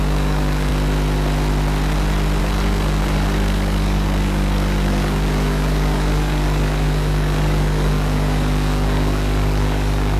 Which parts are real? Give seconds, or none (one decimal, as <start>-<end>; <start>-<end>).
0.7-2.4